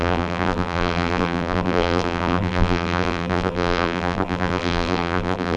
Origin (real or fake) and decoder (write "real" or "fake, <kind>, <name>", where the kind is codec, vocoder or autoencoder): fake, vocoder, BigVGAN v2